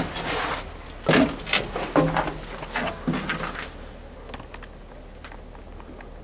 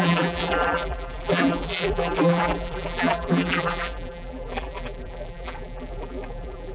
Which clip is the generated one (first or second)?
second